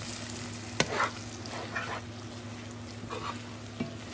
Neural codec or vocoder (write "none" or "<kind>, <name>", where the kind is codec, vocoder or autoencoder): none